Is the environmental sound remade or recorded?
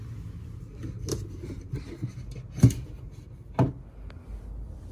recorded